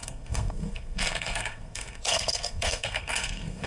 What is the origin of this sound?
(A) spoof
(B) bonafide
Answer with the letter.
A